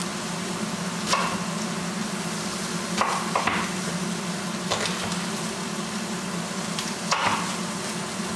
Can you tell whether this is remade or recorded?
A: recorded